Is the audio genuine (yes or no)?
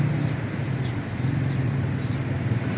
yes